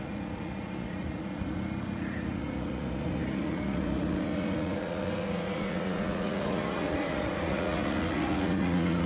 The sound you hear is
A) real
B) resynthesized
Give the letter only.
B